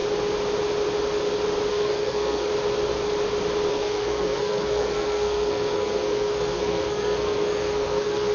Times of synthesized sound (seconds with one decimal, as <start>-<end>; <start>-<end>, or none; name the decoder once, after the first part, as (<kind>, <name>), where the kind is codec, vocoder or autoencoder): 1.7-2.5 (codec, SNAC); 3.7-8.3